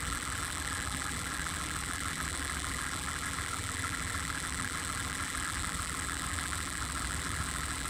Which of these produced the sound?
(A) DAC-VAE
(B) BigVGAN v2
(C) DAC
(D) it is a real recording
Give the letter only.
B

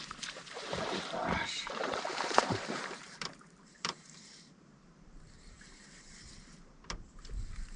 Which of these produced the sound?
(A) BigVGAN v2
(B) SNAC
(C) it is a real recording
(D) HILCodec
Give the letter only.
A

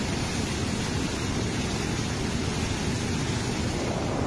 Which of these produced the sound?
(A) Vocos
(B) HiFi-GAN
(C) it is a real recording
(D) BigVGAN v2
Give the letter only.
C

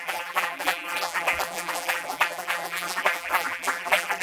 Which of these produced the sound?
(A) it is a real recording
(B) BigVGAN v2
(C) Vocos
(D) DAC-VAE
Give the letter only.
B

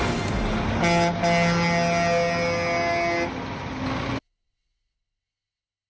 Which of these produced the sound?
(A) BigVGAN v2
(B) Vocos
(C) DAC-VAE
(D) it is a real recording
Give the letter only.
D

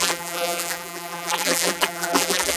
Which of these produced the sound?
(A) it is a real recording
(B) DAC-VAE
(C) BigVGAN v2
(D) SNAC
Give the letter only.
C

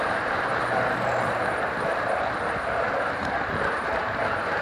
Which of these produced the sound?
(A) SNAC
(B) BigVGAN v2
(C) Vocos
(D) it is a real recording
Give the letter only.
B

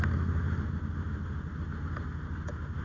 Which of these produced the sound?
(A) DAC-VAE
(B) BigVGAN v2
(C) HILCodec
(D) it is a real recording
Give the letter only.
D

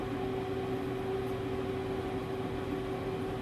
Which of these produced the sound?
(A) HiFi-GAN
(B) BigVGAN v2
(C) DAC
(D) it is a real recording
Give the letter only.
D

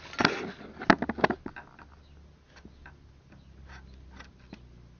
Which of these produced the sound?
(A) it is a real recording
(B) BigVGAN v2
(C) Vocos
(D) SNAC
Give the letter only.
A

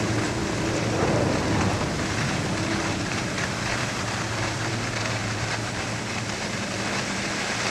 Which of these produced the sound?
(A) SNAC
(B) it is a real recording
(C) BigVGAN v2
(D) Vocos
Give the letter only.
C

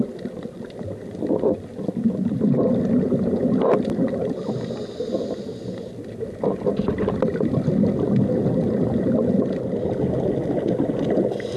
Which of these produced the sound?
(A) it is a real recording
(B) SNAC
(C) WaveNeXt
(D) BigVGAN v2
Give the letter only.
A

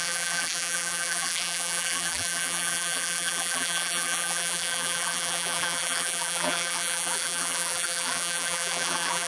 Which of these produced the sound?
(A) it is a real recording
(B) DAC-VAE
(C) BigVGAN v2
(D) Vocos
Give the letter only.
C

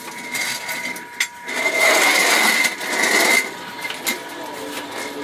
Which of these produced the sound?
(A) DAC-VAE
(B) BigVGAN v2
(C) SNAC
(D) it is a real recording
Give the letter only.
D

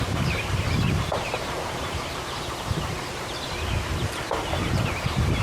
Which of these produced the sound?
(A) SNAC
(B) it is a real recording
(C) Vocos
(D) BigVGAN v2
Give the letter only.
D